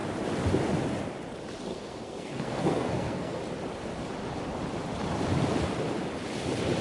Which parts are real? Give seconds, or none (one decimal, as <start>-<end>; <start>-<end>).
0.0-1.7; 3.4-6.8